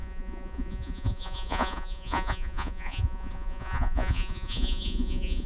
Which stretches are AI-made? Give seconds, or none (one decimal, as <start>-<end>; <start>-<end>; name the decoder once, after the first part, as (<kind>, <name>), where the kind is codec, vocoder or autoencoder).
0.0-5.5 (vocoder, Vocos)